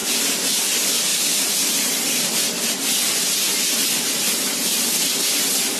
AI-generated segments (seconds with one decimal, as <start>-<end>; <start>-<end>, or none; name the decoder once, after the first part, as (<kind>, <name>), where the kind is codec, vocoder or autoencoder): 1.1-2.6 (vocoder, BigVGAN v2); 4.7-5.3